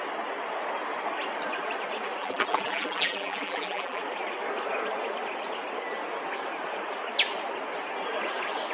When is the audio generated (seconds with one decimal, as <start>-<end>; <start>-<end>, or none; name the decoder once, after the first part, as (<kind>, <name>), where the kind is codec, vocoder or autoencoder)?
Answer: 2.2-4.0 (vocoder, BigVGAN v2)